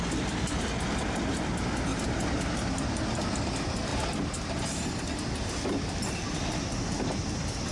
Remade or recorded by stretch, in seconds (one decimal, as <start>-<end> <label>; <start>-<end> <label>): 0.0-1.9 recorded; 1.9-2.5 remade; 2.5-7.7 recorded